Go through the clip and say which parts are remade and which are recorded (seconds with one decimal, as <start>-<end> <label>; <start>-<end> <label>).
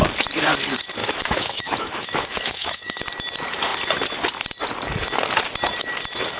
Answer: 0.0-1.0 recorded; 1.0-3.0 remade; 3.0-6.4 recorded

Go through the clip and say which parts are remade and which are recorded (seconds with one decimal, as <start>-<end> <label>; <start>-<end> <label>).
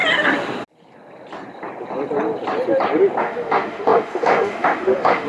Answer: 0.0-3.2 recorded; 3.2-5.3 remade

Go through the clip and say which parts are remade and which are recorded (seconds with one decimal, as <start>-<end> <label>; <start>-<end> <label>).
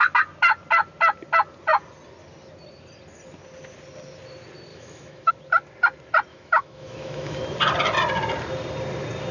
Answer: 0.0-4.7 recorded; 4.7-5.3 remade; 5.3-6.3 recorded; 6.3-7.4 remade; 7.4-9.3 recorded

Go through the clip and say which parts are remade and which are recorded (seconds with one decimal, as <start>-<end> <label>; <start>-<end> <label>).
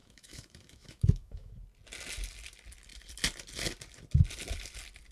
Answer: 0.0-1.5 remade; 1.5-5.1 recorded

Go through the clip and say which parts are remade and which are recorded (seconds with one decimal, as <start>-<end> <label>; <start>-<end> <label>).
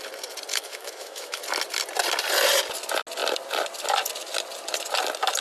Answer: 0.0-0.5 recorded; 0.5-1.4 remade; 1.4-5.4 recorded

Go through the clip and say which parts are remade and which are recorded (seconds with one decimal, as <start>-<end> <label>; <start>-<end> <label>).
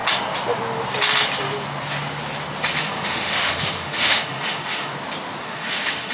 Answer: 0.0-2.8 recorded; 2.8-4.9 remade; 4.9-5.4 recorded; 5.4-6.1 remade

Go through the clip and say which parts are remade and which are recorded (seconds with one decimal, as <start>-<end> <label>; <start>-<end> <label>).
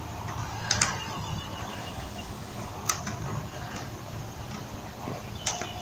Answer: 0.0-1.7 recorded; 1.7-2.7 remade; 2.7-5.8 recorded